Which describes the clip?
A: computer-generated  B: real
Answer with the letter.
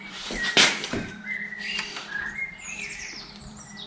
A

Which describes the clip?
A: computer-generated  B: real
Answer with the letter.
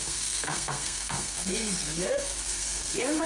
A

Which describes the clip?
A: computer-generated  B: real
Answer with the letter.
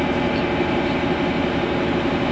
B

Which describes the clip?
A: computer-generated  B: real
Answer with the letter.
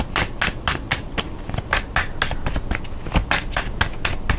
B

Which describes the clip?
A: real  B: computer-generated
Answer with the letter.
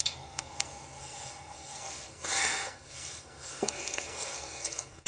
B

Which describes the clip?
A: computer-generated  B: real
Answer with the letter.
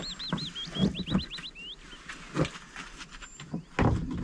B